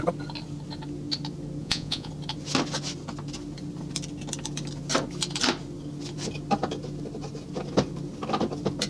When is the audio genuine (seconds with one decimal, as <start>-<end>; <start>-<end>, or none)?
0.0-1.6; 2.1-8.9